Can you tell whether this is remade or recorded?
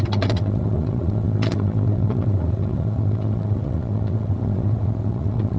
remade